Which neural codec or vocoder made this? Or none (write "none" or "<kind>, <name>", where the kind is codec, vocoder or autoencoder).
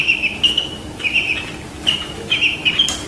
none